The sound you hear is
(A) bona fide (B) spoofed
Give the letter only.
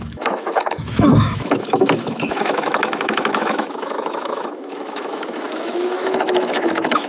B